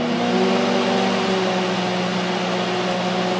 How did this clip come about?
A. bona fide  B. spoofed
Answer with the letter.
A